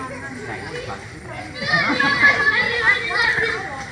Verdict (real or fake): real